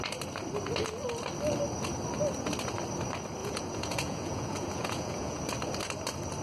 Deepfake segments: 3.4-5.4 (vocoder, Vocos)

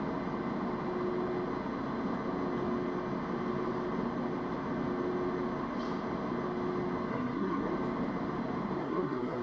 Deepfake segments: 7.1-7.7 (codec, SNAC); 8.8-9.4

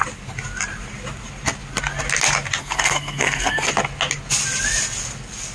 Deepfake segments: 2.6-3.7 (codec, SNAC)

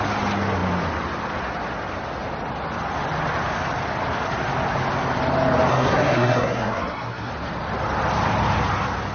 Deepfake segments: 5.7-7.3 (codec, SNAC)

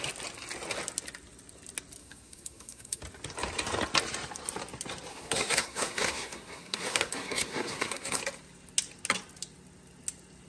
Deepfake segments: 2.0-3.0 (codec, SNAC); 5.1-8.2

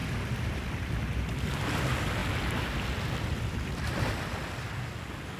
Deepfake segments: 0.0-1.5 (vocoder, BigVGAN v2)